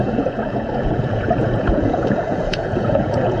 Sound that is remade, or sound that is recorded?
remade